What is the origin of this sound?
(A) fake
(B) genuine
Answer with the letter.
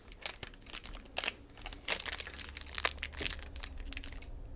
B